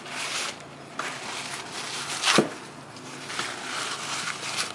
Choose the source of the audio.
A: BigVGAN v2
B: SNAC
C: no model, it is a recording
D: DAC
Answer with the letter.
C